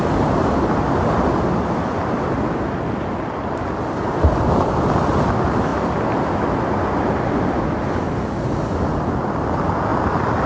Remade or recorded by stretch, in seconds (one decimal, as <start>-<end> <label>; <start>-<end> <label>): 0.0-10.5 recorded